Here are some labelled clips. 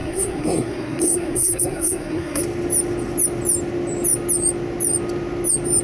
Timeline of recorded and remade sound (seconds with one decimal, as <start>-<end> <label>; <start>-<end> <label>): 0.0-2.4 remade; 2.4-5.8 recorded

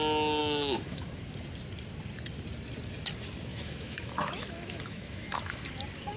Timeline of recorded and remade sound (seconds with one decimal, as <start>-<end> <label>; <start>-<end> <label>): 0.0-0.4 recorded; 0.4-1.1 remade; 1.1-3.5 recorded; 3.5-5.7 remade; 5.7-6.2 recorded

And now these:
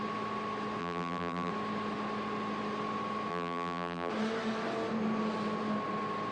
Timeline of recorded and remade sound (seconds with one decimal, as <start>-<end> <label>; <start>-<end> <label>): 0.0-0.8 recorded; 0.8-1.5 remade; 1.5-3.3 recorded; 3.3-4.1 remade; 4.1-6.3 recorded